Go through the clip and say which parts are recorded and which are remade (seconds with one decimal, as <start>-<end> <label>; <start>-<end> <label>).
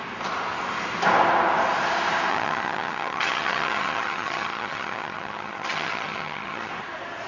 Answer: 0.0-2.3 recorded; 2.3-6.7 remade; 6.7-7.3 recorded